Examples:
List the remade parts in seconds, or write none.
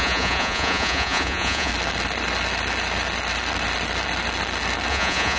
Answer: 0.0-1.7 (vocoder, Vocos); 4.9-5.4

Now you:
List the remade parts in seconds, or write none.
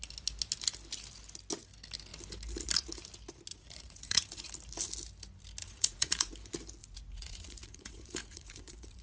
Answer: 3.5-4.5 (vocoder, Vocos); 5.6-6.3; 6.8-9.0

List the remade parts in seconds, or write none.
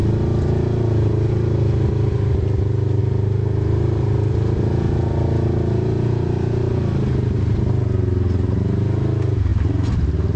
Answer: none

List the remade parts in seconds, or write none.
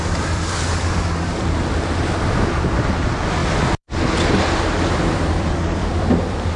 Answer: 0.0-6.6 (vocoder, BigVGAN v2)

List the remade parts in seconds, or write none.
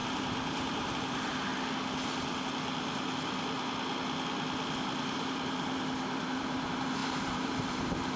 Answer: 0.0-1.5 (vocoder, BigVGAN v2); 4.8-8.2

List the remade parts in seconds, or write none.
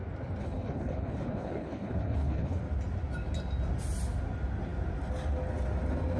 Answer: 0.4-2.6 (codec, HILCodec)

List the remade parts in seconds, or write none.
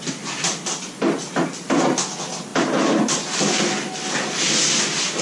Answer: none